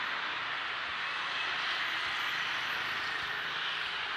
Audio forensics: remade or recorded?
recorded